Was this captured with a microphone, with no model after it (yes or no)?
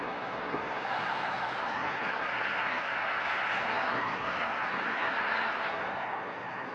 no